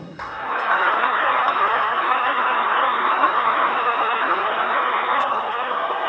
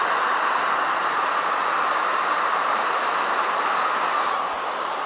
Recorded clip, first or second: second